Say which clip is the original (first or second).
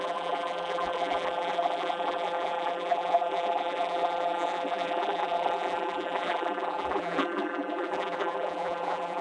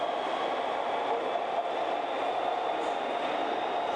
second